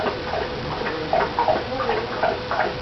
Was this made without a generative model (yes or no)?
yes